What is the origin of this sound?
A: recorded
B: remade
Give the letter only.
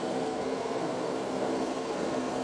B